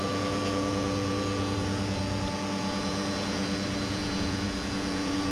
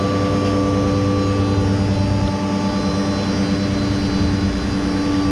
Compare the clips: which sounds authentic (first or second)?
second